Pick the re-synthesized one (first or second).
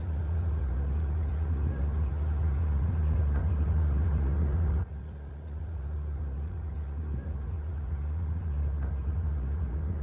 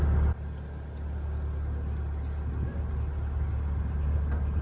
first